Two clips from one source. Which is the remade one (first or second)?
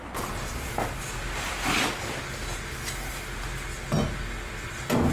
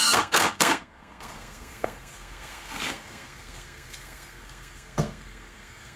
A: second